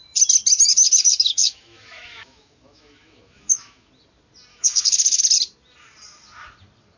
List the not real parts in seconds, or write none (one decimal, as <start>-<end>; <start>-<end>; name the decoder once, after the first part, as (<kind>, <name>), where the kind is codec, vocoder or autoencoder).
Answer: 0.8-3.9 (autoencoder, DAC-VAE); 4.5-5.2